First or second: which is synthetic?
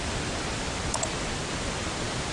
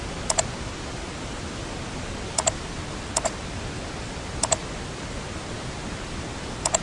first